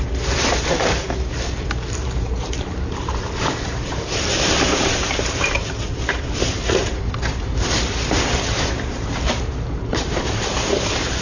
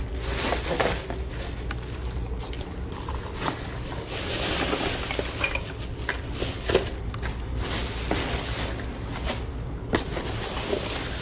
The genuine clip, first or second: second